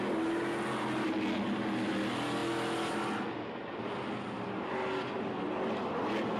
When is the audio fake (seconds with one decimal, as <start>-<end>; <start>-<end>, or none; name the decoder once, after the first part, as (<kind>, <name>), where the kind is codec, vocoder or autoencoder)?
none